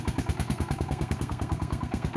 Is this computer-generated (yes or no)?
yes